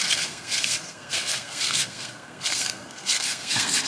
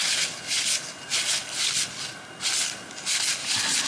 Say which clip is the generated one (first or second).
first